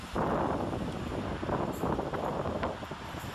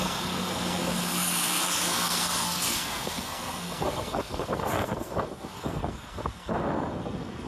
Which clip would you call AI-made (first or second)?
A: second